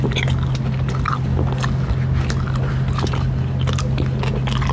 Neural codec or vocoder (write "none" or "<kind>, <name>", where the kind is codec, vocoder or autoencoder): none